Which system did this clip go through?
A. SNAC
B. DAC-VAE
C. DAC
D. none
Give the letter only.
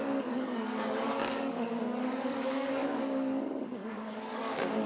C